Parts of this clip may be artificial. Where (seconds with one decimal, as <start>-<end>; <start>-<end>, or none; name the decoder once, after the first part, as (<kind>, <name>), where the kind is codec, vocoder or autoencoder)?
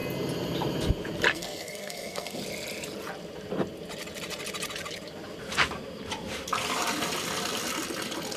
1.3-2.4 (codec, SNAC)